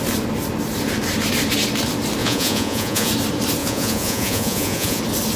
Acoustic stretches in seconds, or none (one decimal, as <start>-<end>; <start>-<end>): 0.0-2.2; 3.1-3.6; 5.0-5.4